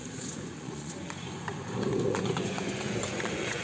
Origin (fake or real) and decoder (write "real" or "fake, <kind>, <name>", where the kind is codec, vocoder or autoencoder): fake, vocoder, Vocos